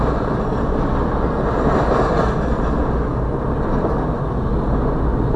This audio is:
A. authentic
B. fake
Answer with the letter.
A